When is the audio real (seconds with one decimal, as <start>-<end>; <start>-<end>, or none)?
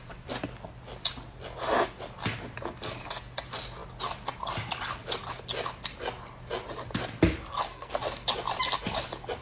0.0-7.5; 8.0-9.4